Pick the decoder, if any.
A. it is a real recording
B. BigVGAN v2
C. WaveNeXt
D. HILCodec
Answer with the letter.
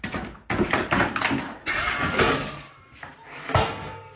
A